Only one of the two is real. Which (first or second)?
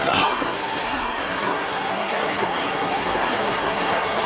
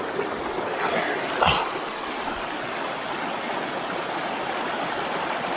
second